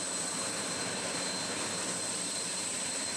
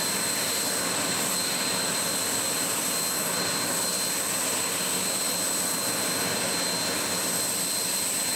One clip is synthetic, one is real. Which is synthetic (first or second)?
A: first